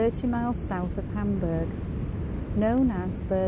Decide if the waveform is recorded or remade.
recorded